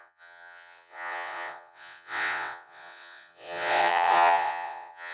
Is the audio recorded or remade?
remade